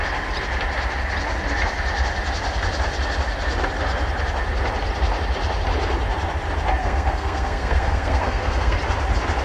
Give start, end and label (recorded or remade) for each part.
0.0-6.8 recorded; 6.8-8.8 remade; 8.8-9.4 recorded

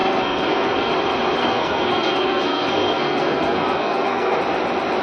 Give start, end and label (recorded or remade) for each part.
0.0-0.9 remade; 0.9-1.4 recorded; 1.4-4.4 remade; 4.4-5.0 recorded